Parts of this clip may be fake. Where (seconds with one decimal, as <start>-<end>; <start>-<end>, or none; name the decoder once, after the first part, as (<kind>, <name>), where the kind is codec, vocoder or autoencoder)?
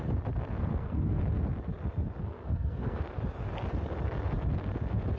0.6-1.2 (codec, SNAC); 2.2-3.0